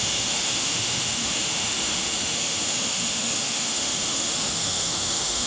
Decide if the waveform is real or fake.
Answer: fake